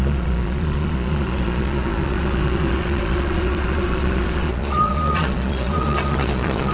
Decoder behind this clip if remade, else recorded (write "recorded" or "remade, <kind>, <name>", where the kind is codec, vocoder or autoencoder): remade, vocoder, Vocos